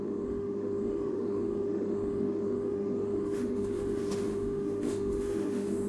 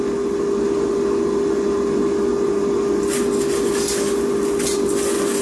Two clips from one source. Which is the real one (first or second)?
second